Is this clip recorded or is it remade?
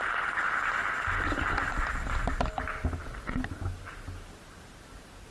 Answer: recorded